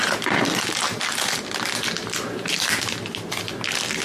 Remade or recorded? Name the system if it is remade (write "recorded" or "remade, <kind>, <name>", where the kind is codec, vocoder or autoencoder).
recorded